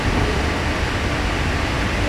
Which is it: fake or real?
real